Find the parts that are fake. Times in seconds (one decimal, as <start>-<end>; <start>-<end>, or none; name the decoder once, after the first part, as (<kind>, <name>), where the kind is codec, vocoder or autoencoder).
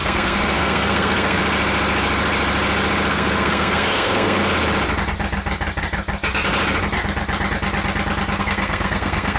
0.0-1.4 (codec, SNAC); 3.1-4.4; 8.4-9.4